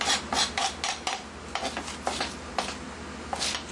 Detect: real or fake real